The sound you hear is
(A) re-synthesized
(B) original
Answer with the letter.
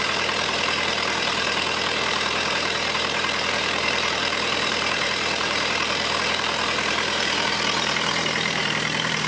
A